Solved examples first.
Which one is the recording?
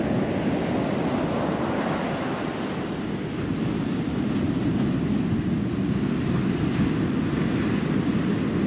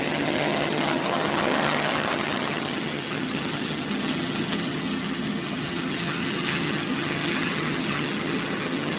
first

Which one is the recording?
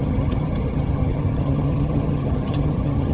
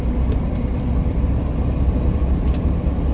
second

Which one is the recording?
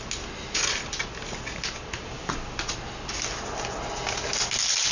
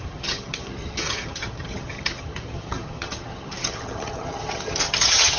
first